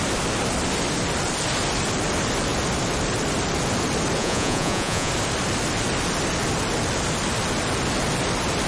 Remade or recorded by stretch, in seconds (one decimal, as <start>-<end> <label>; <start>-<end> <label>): 0.0-4.2 recorded; 4.2-5.1 remade; 5.1-8.7 recorded